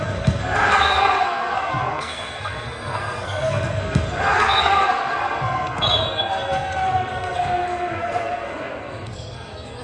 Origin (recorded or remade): remade